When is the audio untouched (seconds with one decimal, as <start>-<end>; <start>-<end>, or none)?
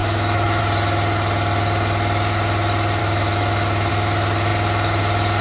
0.6-3.0; 3.9-5.4